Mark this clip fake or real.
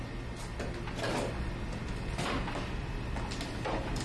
real